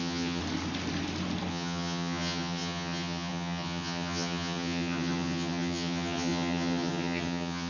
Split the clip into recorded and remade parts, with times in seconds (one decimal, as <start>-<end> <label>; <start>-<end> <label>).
0.0-0.4 remade; 0.4-1.5 recorded; 1.5-7.7 remade